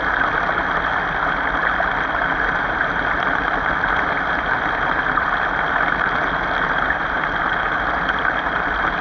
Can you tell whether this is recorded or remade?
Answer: recorded